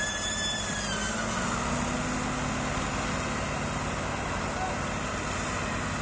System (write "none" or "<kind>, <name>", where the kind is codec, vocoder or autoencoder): none